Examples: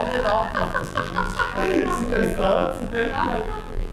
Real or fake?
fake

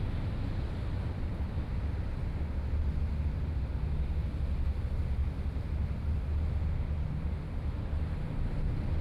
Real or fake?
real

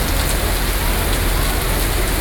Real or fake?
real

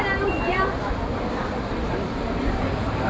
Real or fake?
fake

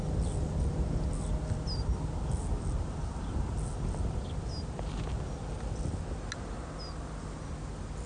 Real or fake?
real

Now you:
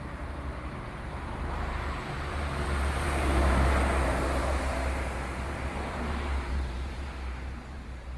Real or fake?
fake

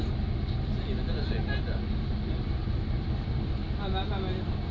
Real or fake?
real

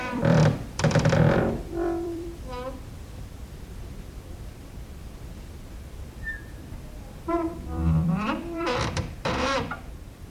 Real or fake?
fake